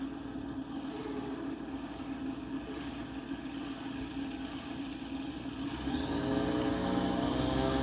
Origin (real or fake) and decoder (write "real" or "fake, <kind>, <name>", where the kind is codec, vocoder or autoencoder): real